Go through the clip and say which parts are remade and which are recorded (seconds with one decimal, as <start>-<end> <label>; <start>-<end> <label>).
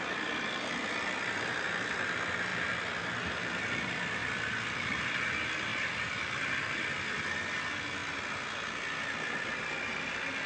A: 0.0-4.2 recorded; 4.2-5.0 remade; 5.0-10.5 recorded